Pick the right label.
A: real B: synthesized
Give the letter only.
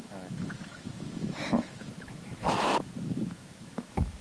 B